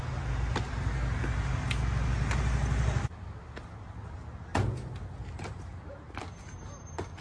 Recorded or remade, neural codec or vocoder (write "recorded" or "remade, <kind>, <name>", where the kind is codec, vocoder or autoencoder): recorded